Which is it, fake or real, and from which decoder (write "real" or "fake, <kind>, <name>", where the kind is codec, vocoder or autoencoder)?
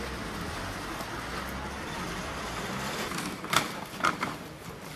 real